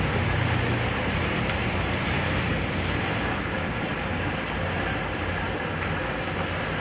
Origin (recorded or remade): recorded